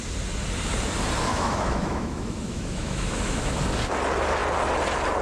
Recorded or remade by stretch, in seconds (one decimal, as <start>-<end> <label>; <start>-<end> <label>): 0.0-1.3 recorded; 1.3-3.4 remade; 3.4-5.2 recorded